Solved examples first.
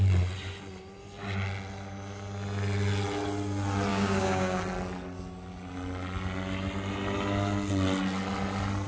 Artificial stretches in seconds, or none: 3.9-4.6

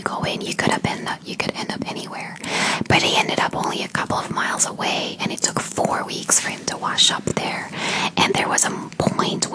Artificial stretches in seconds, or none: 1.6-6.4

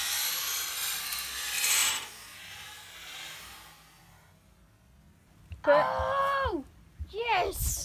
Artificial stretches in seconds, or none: none

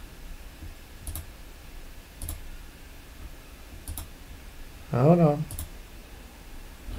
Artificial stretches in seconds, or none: 0.0-6.0; 6.6-7.0

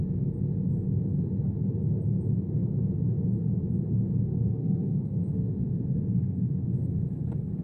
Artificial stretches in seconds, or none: 4.6-6.9